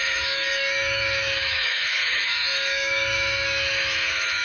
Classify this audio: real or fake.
fake